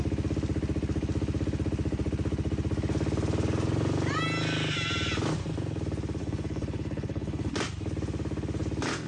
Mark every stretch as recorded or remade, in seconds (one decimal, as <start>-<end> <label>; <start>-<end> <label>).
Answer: 0.0-6.2 recorded; 6.2-7.5 remade; 7.5-9.1 recorded